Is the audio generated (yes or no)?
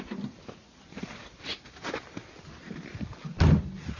no